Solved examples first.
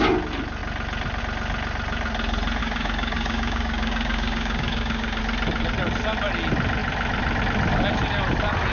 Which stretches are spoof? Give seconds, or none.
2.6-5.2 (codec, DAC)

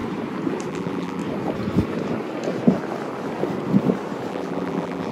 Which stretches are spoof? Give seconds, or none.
0.7-1.2 (vocoder, BigVGAN v2); 4.3-5.1

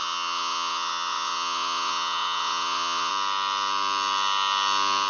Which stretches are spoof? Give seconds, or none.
0.0-3.1 (vocoder, WaveNeXt)